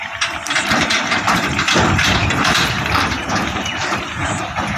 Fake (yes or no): yes